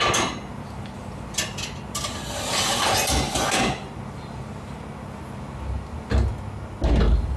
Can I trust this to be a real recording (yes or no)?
yes